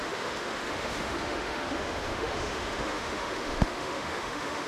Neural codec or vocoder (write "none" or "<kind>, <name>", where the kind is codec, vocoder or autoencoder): autoencoder, DAC-VAE